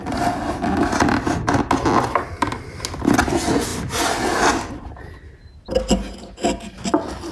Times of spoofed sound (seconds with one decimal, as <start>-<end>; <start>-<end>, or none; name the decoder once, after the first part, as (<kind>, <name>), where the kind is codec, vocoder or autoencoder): none